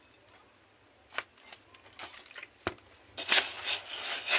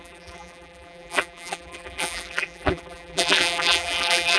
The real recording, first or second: first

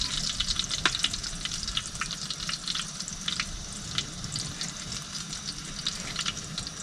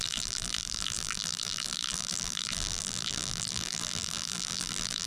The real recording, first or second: first